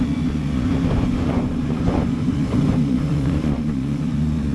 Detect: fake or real fake